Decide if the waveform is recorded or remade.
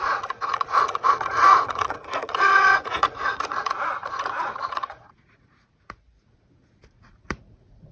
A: remade